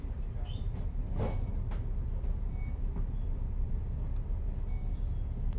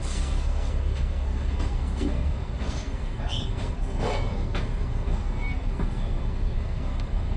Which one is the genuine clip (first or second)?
first